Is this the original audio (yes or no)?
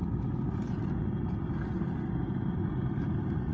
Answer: yes